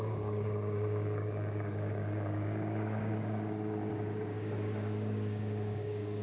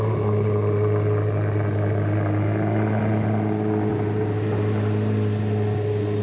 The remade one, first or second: first